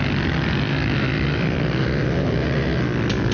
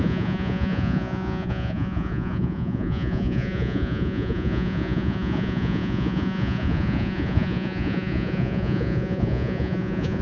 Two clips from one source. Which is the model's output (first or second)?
second